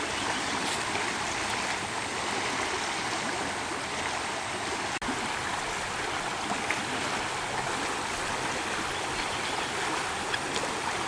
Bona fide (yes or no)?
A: yes